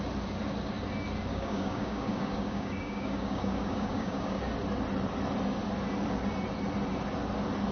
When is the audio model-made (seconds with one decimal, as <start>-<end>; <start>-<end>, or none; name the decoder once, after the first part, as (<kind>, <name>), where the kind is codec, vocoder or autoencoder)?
1.3-4.4 (codec, DAC)

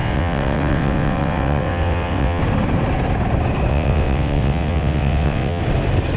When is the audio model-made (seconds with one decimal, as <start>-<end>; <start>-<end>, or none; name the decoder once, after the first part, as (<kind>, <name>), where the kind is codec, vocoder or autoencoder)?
0.0-2.4 (vocoder, WaveNeXt); 3.7-5.6

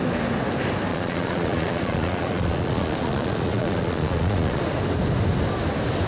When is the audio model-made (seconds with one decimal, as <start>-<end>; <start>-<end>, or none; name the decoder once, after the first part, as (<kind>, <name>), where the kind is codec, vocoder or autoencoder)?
0.9-4.6 (vocoder, Vocos)

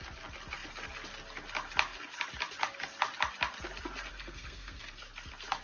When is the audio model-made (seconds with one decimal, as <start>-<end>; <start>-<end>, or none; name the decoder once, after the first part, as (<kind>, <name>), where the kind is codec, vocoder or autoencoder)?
4.1-5.0 (codec, SNAC)